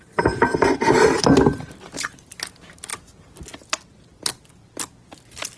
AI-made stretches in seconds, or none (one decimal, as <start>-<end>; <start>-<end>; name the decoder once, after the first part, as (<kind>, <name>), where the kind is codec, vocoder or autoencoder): 0.0-2.9 (vocoder, BigVGAN v2)